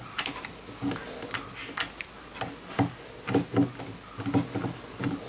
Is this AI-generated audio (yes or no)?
no